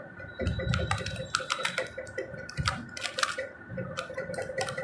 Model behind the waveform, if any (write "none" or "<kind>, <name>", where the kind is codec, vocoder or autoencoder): none